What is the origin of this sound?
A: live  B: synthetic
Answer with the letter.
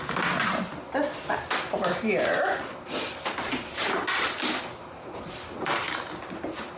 A